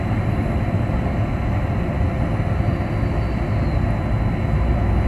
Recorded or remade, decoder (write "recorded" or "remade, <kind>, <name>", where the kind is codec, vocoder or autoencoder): recorded